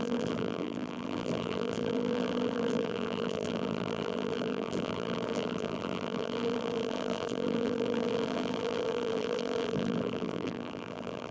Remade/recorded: remade